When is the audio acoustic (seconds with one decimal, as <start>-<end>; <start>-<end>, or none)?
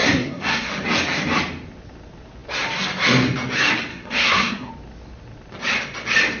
0.7-3.9; 4.7-6.4